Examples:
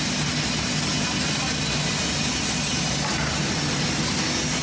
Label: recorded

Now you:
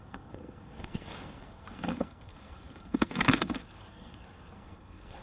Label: remade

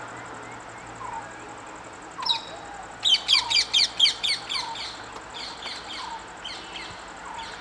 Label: recorded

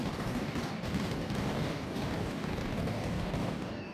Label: remade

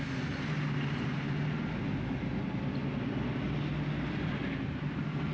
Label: recorded